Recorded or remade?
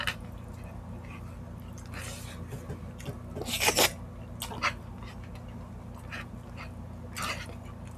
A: recorded